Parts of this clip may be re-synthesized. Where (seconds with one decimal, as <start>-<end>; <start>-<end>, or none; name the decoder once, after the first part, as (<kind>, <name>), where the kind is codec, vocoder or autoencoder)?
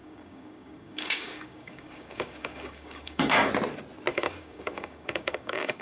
0.0-3.5 (codec, DAC); 4.1-5.8